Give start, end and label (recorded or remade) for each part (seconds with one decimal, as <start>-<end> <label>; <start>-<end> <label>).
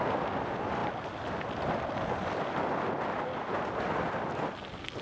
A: 0.0-5.0 recorded